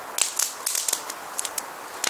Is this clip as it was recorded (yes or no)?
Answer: yes